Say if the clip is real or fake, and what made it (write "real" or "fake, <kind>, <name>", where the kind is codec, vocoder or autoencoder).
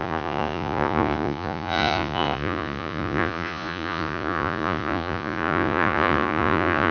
fake, vocoder, Vocos